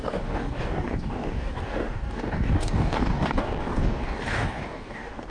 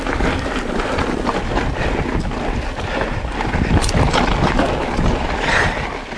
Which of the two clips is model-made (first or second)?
first